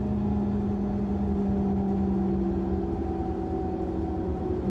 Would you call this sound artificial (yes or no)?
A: no